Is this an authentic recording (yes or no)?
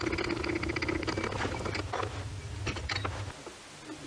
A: yes